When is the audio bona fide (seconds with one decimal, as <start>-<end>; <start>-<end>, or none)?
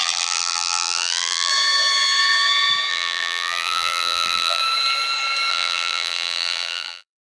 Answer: 1.5-2.9; 4.6-5.5